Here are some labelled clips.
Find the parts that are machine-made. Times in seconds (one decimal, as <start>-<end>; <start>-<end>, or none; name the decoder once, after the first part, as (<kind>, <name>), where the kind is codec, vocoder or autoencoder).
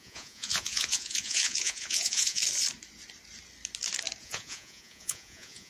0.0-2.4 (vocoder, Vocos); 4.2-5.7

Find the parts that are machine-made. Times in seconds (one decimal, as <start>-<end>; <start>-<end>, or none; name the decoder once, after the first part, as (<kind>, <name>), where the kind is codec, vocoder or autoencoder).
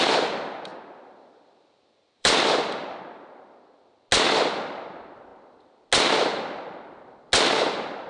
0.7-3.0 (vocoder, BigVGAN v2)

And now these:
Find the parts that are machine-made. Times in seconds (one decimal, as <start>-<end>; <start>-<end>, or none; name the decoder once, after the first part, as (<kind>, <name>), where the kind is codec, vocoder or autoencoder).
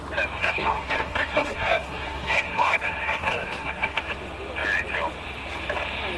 0.4-4.0 (codec, SNAC)